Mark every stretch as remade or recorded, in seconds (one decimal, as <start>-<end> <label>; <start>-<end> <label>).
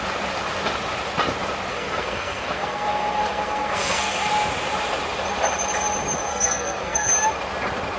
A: 0.0-1.7 recorded; 1.7-4.3 remade; 4.3-6.3 recorded; 6.3-7.1 remade; 7.1-8.0 recorded